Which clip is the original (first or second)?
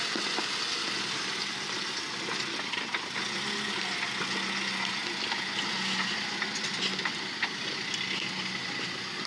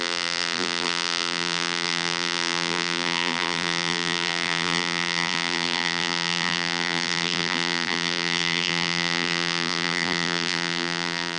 first